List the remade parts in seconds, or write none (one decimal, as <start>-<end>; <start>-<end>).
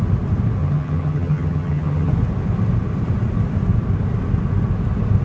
0.6-2.1